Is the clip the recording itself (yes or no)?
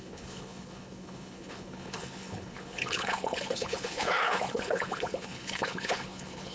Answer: no